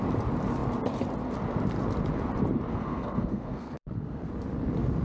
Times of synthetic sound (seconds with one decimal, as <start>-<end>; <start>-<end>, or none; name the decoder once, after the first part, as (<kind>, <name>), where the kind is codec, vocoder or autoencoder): 2.7-4.3 (codec, SNAC)